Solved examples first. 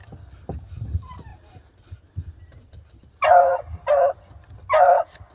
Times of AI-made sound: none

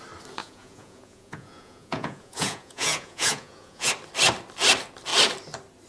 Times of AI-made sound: 0.4-3.9 (vocoder, Vocos)

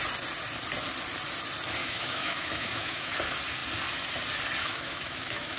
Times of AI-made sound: 1.8-3.1 (autoencoder, DAC-VAE); 4.6-5.6

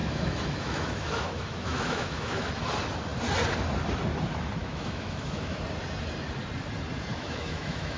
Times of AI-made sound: 0.0-2.5 (autoencoder, DAC-VAE); 4.6-5.6; 7.1-8.0

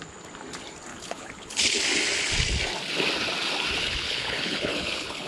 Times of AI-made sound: 0.9-1.8 (codec, HILCodec); 3.8-5.3